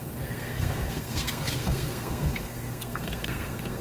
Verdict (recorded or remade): remade